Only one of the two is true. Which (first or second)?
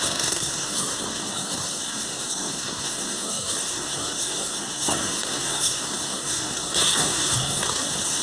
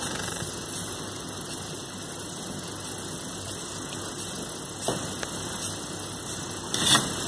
second